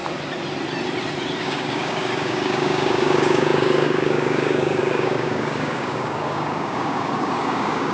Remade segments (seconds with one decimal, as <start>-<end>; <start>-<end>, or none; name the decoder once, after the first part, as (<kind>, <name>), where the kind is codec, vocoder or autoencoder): 1.4-7.9 (codec, DAC)